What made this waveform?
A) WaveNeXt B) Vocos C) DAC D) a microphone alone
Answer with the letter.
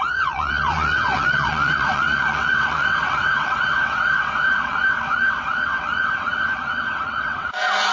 A